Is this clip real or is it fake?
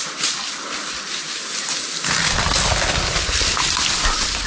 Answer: real